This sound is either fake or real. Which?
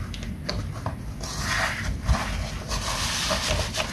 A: real